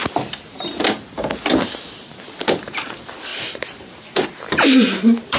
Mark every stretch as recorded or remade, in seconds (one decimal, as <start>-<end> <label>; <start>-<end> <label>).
0.0-3.3 recorded; 3.3-5.4 remade

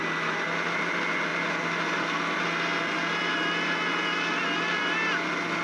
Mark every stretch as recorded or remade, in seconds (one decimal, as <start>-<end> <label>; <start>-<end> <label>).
0.0-5.6 recorded

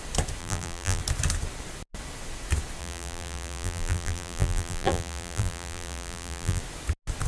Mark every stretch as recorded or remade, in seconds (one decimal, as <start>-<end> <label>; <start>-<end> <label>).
0.0-0.4 recorded; 0.4-1.0 remade; 1.0-2.8 recorded; 2.8-6.6 remade; 6.6-7.3 recorded

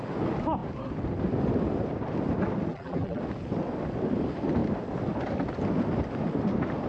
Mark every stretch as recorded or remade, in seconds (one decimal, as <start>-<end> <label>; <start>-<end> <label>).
0.0-2.7 recorded; 2.7-3.2 remade; 3.2-6.9 recorded